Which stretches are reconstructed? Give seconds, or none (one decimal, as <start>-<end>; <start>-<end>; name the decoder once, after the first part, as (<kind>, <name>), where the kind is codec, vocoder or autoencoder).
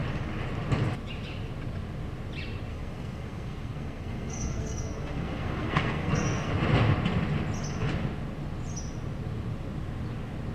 2.7-6.5 (codec, SNAC)